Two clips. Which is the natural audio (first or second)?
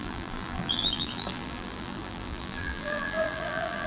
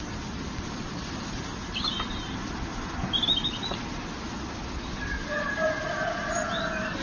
second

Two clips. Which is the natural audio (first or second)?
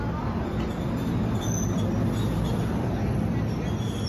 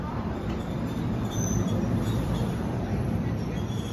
first